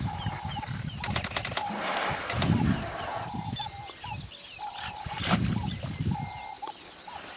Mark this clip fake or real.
real